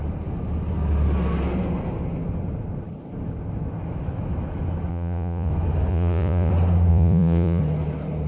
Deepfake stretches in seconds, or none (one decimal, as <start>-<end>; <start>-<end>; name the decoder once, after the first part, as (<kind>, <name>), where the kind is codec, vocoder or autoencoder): 4.9-5.5 (vocoder, Vocos); 5.9-6.5; 6.9-7.6